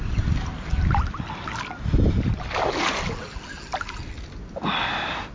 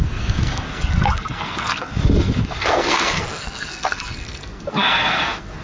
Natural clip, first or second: first